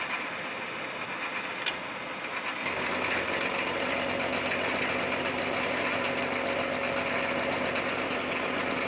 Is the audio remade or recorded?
recorded